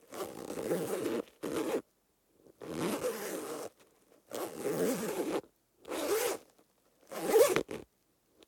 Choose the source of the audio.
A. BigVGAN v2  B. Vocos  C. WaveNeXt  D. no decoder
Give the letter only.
D